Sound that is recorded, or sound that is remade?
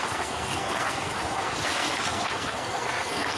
remade